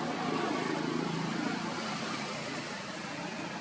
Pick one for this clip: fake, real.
real